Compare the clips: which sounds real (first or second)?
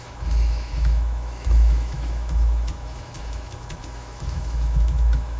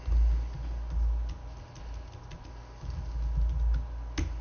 second